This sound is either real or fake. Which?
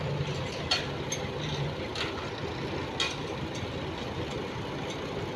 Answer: real